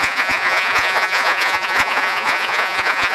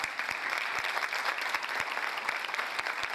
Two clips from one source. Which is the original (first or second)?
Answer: second